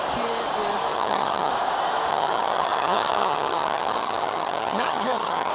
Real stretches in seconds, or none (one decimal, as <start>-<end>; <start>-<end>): 0.0-0.9; 1.5-2.1